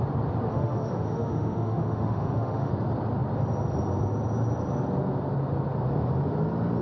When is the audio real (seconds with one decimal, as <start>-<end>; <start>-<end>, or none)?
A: 0.0-0.5; 2.7-6.8